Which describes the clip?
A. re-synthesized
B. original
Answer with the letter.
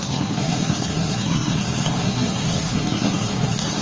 A